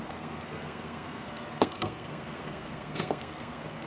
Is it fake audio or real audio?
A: fake